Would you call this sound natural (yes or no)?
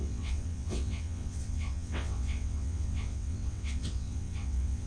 no